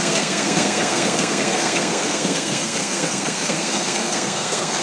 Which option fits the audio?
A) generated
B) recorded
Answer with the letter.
A